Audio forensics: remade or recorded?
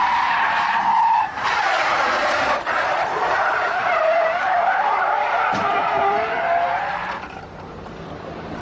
remade